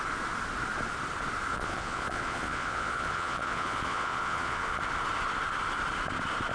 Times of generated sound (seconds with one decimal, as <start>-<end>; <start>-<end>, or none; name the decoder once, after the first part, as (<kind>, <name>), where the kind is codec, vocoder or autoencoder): 1.5-4.8 (vocoder, Vocos)

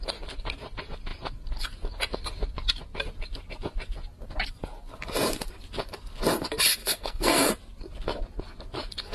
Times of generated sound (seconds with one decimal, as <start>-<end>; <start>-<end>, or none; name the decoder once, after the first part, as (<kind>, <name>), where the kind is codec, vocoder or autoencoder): 6.8-7.5 (codec, SNAC)

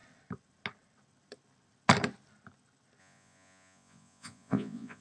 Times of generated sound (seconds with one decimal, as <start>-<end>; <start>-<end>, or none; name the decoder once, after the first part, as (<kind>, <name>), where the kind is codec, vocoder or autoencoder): 3.0-5.0 (vocoder, Vocos)